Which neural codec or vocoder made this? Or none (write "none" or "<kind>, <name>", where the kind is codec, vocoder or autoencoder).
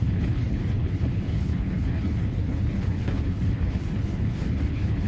codec, HILCodec